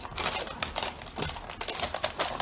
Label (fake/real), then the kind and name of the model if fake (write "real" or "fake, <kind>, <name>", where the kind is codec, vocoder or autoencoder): real